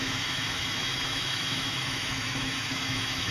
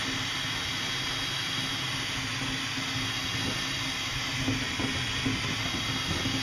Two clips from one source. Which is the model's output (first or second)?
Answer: first